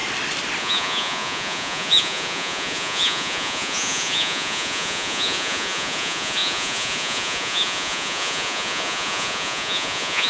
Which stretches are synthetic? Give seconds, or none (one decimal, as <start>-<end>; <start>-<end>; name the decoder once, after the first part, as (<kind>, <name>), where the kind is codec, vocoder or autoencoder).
0.6-10.3 (vocoder, Vocos)